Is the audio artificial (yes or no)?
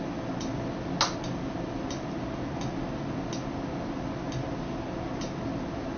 no